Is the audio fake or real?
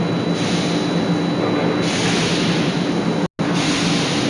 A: real